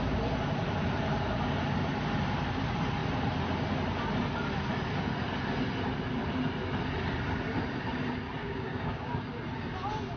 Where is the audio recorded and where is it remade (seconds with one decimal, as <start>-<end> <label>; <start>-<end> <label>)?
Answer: 0.0-8.4 recorded; 8.4-9.1 remade; 9.1-10.2 recorded